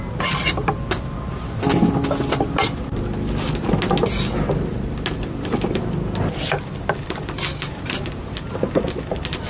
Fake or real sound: real